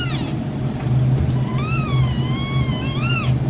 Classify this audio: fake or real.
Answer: real